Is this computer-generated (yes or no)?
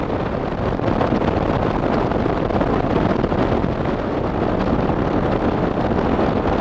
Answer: no